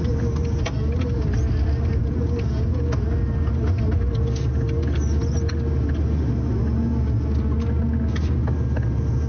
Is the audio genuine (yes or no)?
yes